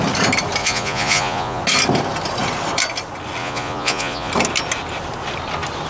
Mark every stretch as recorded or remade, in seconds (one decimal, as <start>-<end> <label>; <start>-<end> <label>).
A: 0.0-0.6 recorded; 0.6-1.6 remade; 1.6-3.4 recorded; 3.4-4.3 remade; 4.3-5.9 recorded